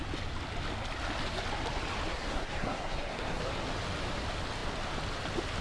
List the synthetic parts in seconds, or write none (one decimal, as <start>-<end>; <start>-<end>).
2.1-3.4